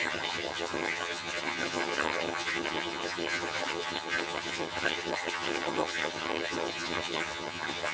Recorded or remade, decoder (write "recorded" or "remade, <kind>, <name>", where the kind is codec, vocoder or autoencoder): remade, vocoder, HiFi-GAN